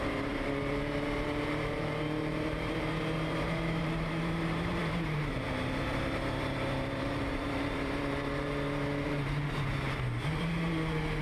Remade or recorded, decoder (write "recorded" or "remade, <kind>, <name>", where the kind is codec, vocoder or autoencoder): remade, vocoder, BigVGAN v2